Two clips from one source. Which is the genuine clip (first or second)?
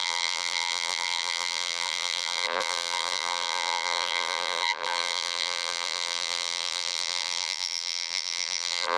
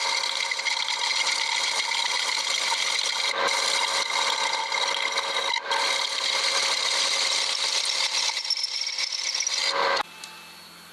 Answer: second